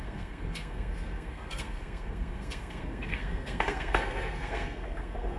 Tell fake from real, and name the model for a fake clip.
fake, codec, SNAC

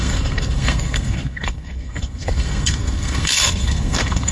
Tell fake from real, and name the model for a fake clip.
fake, codec, SNAC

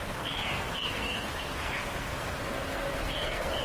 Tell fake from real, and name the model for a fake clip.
fake, codec, SNAC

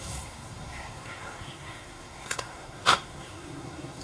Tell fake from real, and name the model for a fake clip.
fake, codec, SNAC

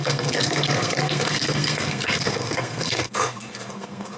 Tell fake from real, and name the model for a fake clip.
fake, codec, SNAC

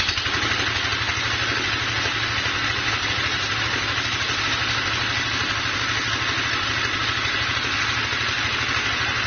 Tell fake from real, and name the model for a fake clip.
real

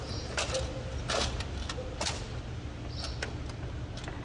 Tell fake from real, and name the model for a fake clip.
real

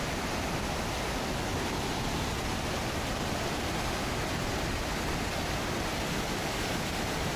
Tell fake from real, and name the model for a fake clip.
real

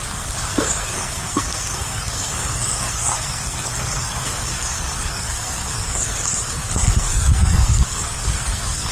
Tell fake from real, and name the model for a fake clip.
fake, codec, SNAC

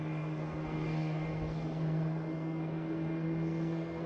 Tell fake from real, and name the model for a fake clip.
fake, codec, SNAC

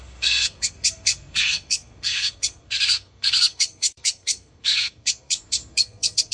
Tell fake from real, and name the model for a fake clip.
fake, codec, SNAC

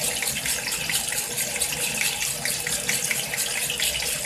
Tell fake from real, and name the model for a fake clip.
real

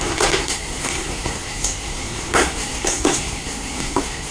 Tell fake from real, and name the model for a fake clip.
fake, codec, SNAC